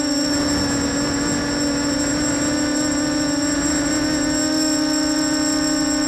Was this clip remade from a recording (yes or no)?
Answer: no